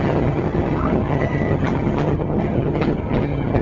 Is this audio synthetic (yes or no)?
yes